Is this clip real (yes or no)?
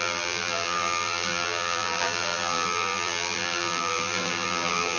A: no